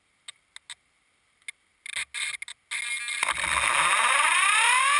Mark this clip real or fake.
real